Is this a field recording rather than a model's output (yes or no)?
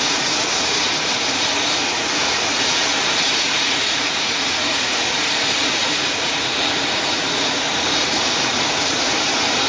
no